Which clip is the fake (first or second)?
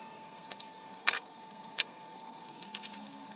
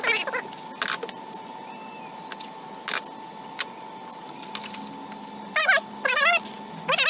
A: first